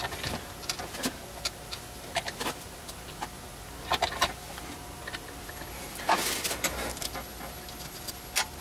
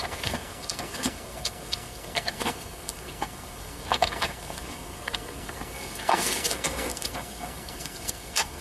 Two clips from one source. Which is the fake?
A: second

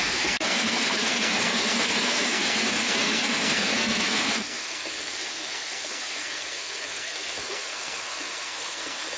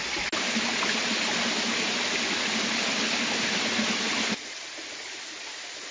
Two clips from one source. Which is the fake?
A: first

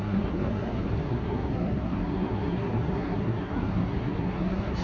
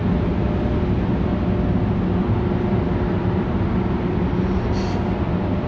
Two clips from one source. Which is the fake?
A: first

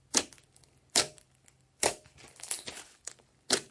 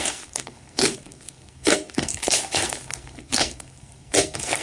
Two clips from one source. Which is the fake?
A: second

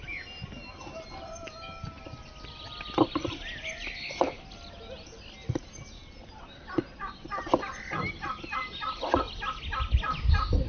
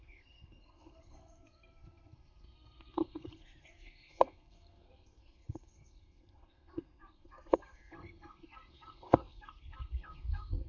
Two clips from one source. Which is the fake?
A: second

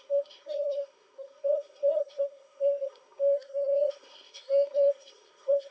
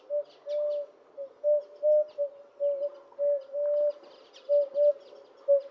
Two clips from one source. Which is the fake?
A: first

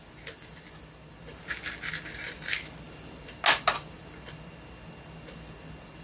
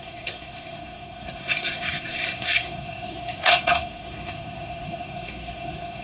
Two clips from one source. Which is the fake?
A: second